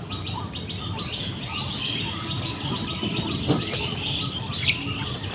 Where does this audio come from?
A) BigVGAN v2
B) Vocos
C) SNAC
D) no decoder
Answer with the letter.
D